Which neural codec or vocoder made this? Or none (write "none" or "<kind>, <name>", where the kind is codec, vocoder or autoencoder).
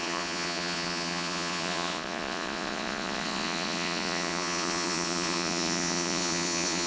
vocoder, Vocos